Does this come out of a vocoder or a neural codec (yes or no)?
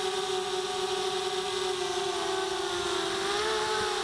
no